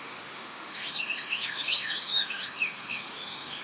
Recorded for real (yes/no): no